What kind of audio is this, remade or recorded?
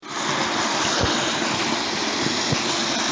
recorded